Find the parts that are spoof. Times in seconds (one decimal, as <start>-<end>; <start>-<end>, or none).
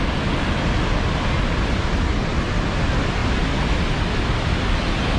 none